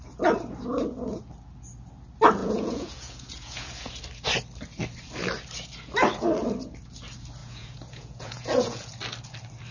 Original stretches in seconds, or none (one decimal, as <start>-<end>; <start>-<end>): 0.0-2.4; 3.9-7.4; 8.9-9.7